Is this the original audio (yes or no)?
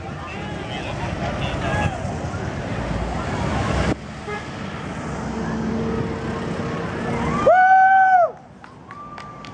yes